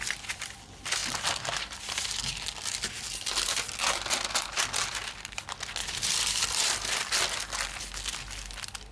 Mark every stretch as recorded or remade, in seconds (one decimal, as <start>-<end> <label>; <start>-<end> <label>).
0.0-5.8 recorded; 5.8-6.6 remade; 6.6-8.9 recorded